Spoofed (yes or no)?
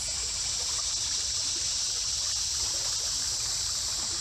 no